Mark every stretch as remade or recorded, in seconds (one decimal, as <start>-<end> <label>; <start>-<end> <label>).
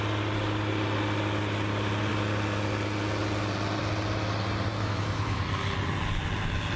0.0-4.7 recorded; 4.7-5.4 remade; 5.4-6.8 recorded